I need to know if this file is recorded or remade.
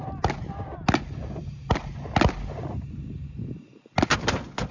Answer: recorded